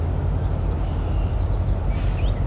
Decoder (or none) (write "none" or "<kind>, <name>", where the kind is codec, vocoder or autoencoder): none